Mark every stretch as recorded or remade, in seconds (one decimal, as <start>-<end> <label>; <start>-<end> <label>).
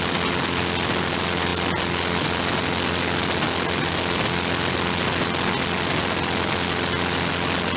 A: 0.0-7.8 recorded